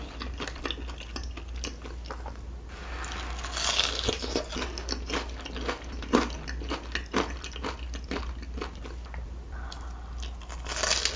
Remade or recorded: recorded